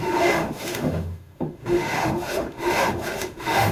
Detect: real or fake fake